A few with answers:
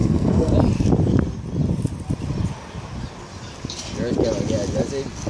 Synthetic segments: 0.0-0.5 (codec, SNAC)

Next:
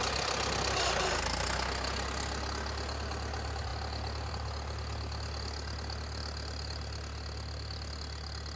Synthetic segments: none

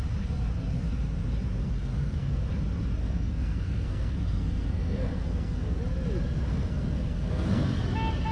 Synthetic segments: 1.6-2.5 (codec, SNAC); 3.0-5.8; 6.5-7.8

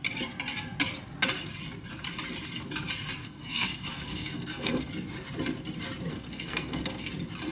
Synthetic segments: 3.2-4.9 (codec, SNAC); 6.1-7.1

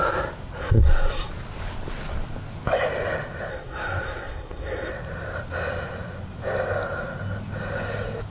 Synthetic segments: 0.6-1.3 (codec, SNAC); 3.5-4.9

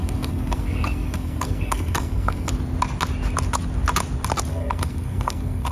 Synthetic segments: 0.0-2.5 (codec, SNAC); 4.5-5.7

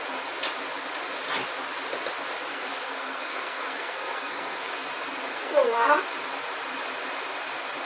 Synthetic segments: 2.5-4.7 (codec, SNAC); 5.3-6.0